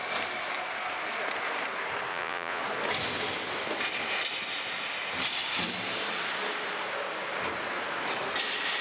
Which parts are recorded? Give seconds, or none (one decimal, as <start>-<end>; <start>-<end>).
0.0-2.1; 2.6-8.8